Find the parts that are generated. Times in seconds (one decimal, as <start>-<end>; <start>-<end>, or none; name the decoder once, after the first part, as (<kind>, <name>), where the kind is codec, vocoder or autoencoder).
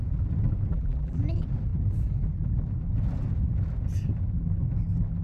0.7-1.2 (vocoder, BigVGAN v2)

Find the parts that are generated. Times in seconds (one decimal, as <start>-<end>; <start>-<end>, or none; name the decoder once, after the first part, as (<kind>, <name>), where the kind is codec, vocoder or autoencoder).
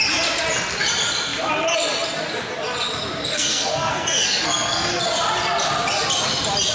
3.2-4.9 (codec, SNAC)